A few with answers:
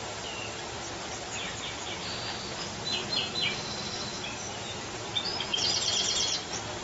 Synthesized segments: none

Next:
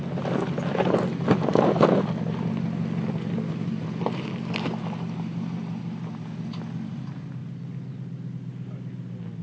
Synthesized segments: none

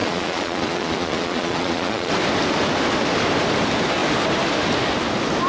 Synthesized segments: 0.0-2.1 (vocoder, Vocos)

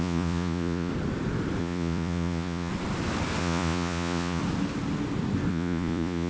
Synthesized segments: 0.0-0.9 (vocoder, Vocos); 1.6-2.7; 3.4-4.4; 5.5-6.3

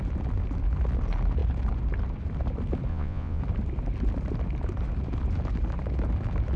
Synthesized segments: 2.9-3.4 (vocoder, Vocos)